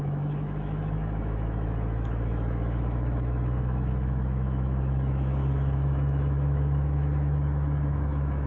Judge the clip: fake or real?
fake